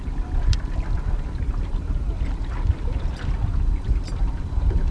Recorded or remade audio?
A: recorded